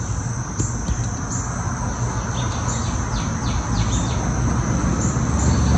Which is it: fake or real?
real